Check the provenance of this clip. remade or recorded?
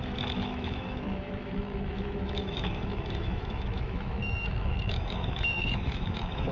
remade